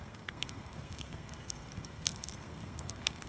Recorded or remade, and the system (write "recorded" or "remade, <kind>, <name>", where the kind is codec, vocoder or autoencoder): remade, codec, SNAC